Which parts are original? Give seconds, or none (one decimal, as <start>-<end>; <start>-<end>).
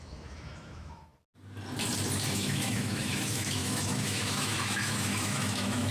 1.1-2.3